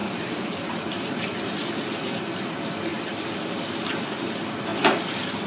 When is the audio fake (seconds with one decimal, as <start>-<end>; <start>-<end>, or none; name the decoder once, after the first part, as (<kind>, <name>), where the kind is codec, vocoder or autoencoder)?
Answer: 0.0-1.8 (vocoder, BigVGAN v2); 2.9-3.5